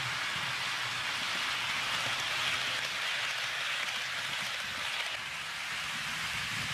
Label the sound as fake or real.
real